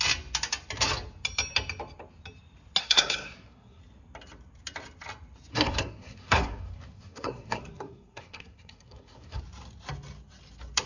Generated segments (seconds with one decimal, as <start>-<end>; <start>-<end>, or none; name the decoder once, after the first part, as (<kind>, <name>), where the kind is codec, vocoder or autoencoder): 2.8-3.8 (codec, SNAC); 5.5-9.4

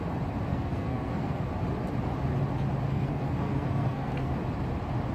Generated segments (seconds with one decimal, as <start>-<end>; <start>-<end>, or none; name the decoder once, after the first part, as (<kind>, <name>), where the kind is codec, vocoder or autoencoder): 0.5-1.5 (codec, SNAC); 2.9-4.3

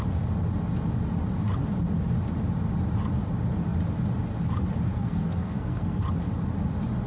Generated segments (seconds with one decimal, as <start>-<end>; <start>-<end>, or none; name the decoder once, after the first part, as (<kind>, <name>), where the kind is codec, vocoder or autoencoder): 4.9-6.0 (codec, SNAC)

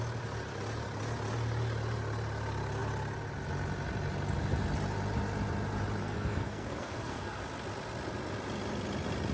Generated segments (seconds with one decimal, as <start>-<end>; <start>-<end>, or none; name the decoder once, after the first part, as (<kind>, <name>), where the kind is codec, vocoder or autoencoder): 6.0-7.4 (codec, SNAC)